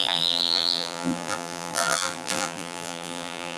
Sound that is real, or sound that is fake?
fake